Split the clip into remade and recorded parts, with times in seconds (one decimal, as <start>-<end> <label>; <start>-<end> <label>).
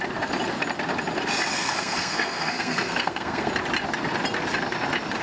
0.0-1.5 recorded; 1.5-3.5 remade; 3.5-5.2 recorded